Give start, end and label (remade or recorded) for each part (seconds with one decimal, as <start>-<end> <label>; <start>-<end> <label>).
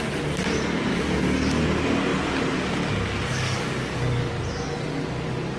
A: 0.0-0.9 recorded; 0.9-1.6 remade; 1.6-3.3 recorded; 3.3-4.3 remade; 4.3-5.6 recorded